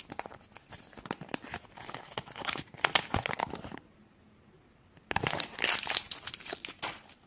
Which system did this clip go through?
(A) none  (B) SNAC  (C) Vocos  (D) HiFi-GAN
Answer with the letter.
A